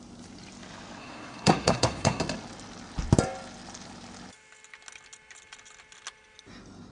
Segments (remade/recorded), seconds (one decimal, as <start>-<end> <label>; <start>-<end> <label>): 0.0-1.0 recorded; 1.0-2.2 remade; 2.2-6.9 recorded

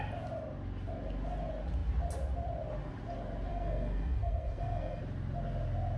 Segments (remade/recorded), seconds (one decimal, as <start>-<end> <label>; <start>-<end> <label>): 0.0-3.5 recorded; 3.5-5.0 remade; 5.0-6.0 recorded

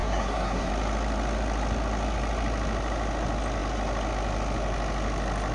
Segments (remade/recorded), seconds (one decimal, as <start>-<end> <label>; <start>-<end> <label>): 0.0-0.7 remade; 0.7-5.5 recorded

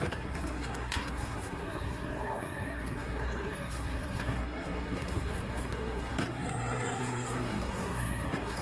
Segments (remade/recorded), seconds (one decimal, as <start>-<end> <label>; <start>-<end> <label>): 0.0-8.6 remade

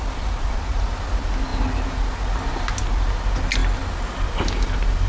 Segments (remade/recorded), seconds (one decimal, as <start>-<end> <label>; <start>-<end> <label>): 0.0-5.1 recorded

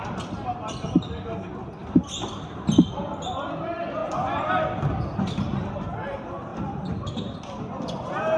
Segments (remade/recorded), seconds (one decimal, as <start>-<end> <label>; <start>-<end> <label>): 0.0-8.4 recorded

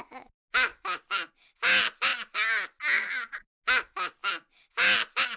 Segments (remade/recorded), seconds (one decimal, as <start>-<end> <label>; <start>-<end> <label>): 0.0-5.4 recorded